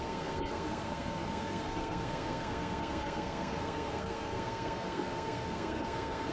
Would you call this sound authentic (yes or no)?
no